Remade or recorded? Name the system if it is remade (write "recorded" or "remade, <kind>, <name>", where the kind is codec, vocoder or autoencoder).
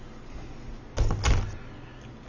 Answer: recorded